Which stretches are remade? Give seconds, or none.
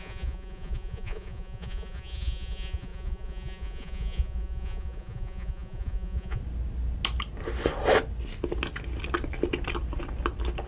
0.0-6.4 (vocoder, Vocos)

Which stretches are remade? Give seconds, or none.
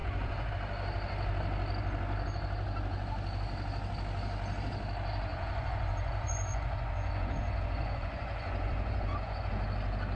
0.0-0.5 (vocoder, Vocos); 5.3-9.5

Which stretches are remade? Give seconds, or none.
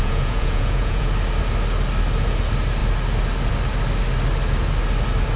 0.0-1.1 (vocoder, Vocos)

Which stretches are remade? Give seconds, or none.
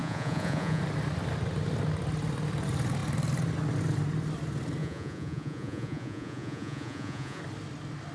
0.0-0.8 (vocoder, Vocos); 4.8-7.4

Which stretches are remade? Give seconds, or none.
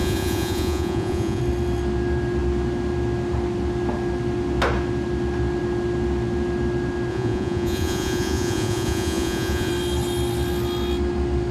0.0-1.4 (vocoder, Vocos); 7.1-9.7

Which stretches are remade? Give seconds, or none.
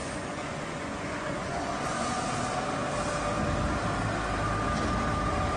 0.0-2.2 (vocoder, Vocos)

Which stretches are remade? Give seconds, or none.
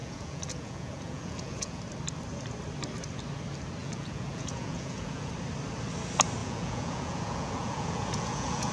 0.0-1.8 (vocoder, Vocos); 3.8-5.3; 6.4-8.7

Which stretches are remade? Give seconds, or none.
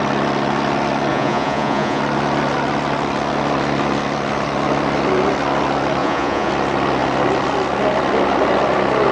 1.1-2.0 (vocoder, Vocos); 6.0-6.5